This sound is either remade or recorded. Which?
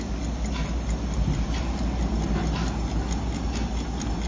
recorded